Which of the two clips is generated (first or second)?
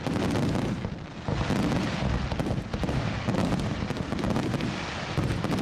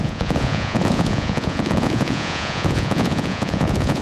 second